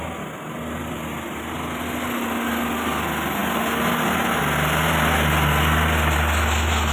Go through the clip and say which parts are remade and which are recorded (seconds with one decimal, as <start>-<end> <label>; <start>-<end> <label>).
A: 0.0-6.9 recorded